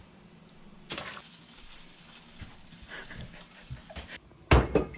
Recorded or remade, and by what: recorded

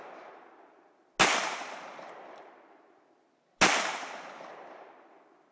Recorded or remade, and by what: recorded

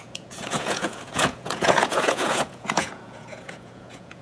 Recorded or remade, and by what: remade, vocoder, Vocos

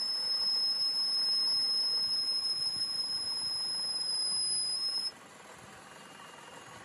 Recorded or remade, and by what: recorded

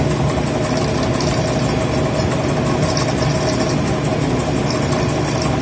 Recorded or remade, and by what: recorded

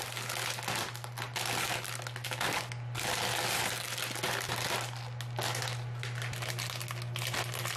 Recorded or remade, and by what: recorded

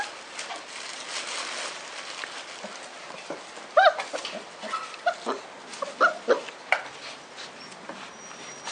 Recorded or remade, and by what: recorded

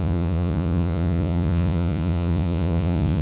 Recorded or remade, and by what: remade, vocoder, Vocos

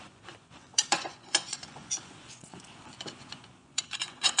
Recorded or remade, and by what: remade, vocoder, Vocos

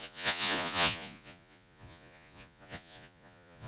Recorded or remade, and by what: remade, vocoder, Vocos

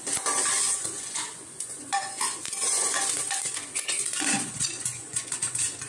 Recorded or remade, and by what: remade, vocoder, Vocos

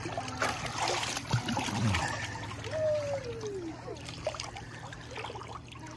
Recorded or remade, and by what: recorded